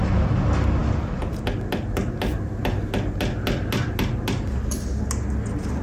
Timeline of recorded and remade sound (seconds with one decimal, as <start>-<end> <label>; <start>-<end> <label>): 0.0-5.8 recorded